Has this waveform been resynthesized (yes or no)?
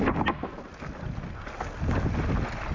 no